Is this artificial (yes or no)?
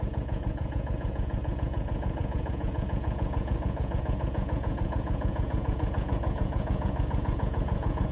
yes